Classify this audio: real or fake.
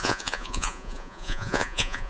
fake